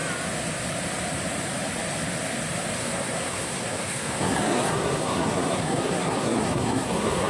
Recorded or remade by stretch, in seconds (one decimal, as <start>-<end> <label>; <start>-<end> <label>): 0.0-2.8 recorded; 2.8-7.3 remade